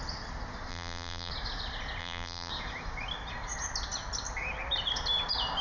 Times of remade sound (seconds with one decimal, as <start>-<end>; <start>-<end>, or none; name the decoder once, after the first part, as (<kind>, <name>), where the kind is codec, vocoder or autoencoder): 0.7-1.3 (vocoder, BigVGAN v2); 2.0-2.5